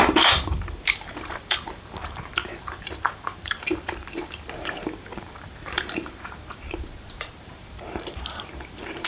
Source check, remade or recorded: remade